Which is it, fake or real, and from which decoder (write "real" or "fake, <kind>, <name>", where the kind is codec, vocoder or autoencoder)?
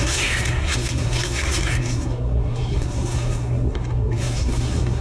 fake, codec, SNAC